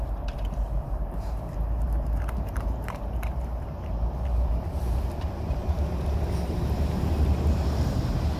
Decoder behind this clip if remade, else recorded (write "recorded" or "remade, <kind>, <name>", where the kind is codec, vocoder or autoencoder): remade, vocoder, BigVGAN v2